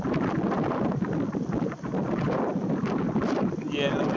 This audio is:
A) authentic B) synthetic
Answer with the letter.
A